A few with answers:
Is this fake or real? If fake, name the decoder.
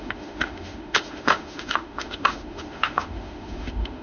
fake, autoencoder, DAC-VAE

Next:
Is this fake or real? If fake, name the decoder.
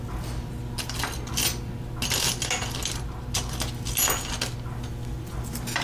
real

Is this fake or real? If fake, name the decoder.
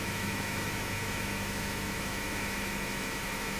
fake, autoencoder, DAC-VAE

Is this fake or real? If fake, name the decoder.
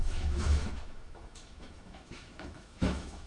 fake, autoencoder, DAC-VAE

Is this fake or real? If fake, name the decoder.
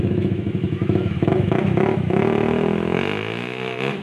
fake, autoencoder, DAC-VAE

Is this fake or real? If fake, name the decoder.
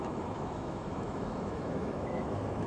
fake, autoencoder, DAC-VAE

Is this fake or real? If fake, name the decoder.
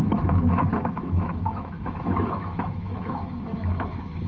fake, autoencoder, DAC-VAE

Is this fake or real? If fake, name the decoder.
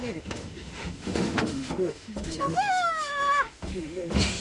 fake, autoencoder, DAC-VAE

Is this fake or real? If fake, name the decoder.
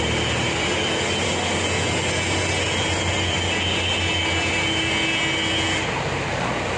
real